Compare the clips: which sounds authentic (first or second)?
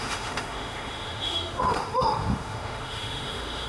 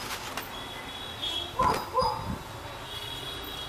second